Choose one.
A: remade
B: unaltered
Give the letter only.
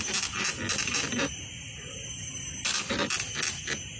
B